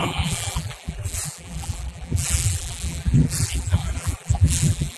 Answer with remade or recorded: remade